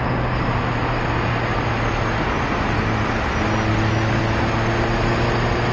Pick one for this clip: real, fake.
real